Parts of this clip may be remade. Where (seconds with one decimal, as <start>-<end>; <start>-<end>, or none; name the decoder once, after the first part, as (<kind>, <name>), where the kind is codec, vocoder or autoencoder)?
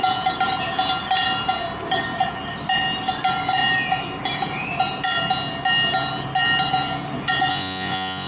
7.5-8.3 (vocoder, Vocos)